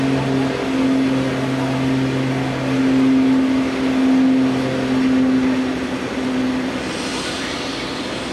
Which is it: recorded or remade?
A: recorded